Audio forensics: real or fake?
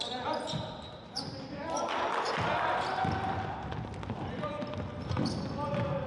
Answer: real